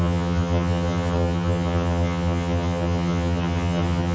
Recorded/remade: remade